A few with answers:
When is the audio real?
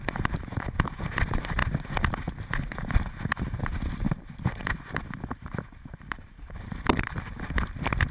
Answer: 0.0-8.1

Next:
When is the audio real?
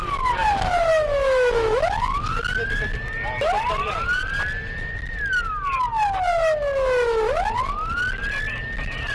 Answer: 0.0-0.9; 2.0-9.1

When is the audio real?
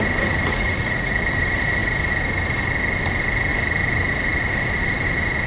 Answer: 0.0-0.5; 1.2-5.5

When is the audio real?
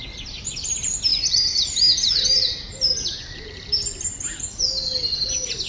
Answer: 0.0-5.7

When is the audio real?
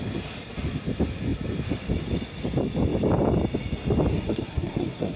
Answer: 0.0-4.1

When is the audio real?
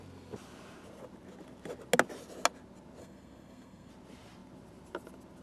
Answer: 0.0-3.0; 3.9-5.4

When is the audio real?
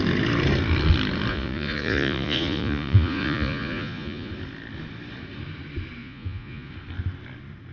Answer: 0.0-1.3; 4.3-6.0; 6.7-7.7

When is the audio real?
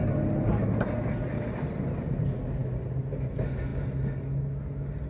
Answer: 0.0-5.1